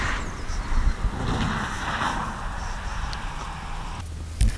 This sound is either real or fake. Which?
real